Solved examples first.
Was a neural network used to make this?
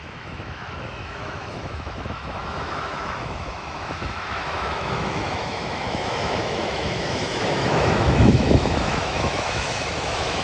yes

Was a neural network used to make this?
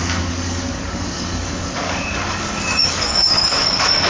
yes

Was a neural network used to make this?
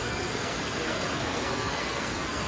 yes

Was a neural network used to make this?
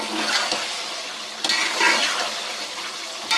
no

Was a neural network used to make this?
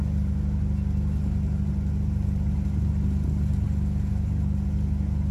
no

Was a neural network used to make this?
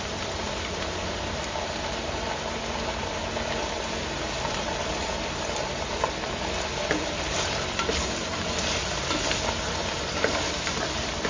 yes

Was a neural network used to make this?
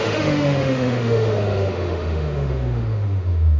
yes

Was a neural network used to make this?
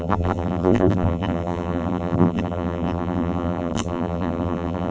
yes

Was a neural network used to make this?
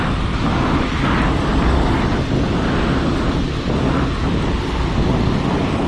no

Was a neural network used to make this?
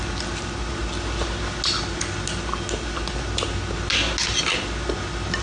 no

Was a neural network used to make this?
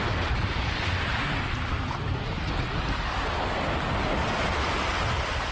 no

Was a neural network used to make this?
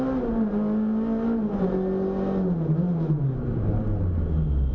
no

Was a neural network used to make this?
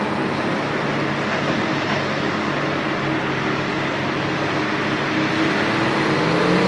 no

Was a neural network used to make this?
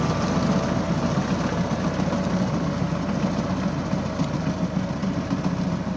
no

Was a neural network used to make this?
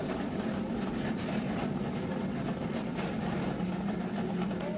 no